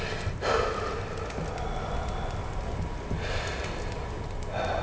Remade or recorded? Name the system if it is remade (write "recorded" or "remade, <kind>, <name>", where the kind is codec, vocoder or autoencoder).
recorded